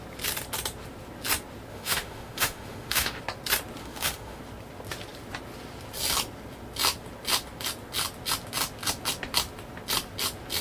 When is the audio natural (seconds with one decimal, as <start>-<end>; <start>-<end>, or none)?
0.0-1.7; 3.2-3.8; 4.4-10.6